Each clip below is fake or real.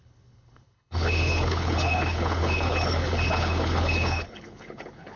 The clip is fake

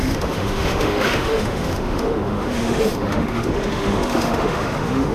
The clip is fake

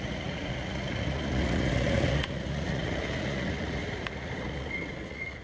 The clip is fake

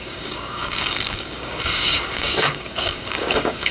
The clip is fake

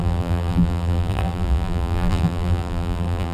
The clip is fake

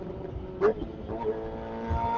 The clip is real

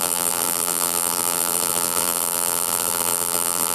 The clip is fake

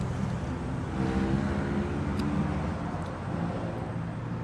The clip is real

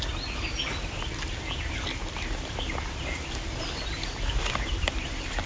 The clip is real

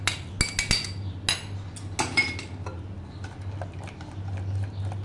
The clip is real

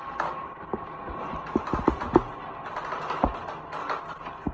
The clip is real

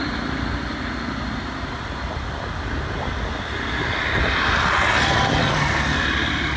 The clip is real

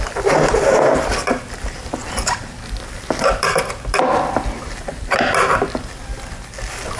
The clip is real